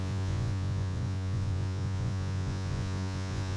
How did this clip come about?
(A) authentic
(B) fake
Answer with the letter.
B